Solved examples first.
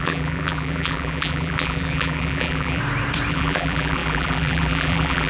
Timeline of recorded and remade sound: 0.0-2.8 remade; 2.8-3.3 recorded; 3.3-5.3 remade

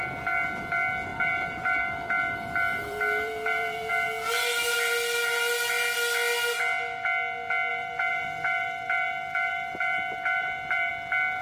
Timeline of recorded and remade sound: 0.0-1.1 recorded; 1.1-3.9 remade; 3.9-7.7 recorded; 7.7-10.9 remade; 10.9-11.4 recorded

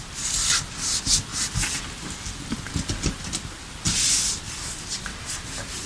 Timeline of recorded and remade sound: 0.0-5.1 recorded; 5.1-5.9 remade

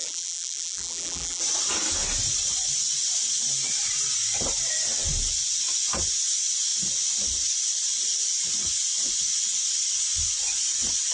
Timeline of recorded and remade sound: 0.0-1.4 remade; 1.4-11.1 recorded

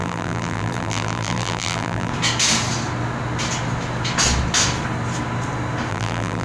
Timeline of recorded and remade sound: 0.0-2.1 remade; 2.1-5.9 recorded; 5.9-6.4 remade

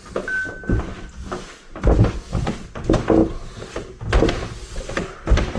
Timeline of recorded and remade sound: 0.0-3.2 recorded; 3.2-3.7 remade; 3.7-5.6 recorded

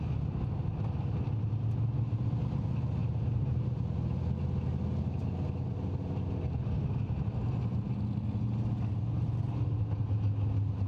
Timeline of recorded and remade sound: 0.0-3.0 recorded; 3.0-4.2 remade; 4.2-10.9 recorded

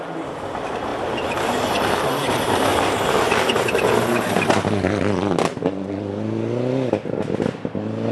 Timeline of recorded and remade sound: 0.0-2.7 remade; 2.7-7.3 recorded; 7.3-8.1 remade